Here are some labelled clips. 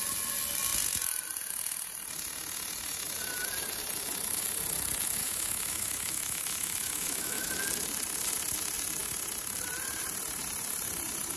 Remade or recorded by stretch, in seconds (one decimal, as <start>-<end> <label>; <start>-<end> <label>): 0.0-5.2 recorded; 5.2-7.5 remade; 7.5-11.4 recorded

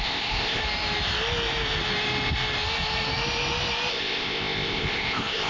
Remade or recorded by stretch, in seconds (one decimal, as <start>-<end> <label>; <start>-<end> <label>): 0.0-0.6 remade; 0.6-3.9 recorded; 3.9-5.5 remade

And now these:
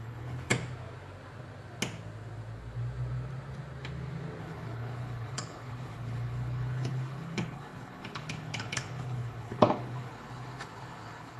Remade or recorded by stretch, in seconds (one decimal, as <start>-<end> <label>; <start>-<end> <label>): 0.0-0.5 remade; 0.5-4.4 recorded; 4.4-11.4 remade